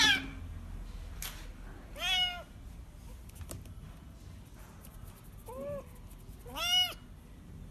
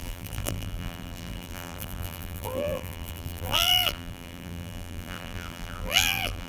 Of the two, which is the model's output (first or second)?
second